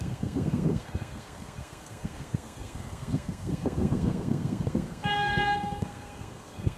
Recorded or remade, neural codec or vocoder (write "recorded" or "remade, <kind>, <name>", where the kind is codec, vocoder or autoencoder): remade, codec, SNAC